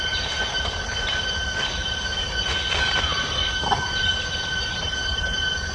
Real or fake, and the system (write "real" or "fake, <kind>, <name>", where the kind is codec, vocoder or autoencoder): real